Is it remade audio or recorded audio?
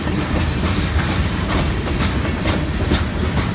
remade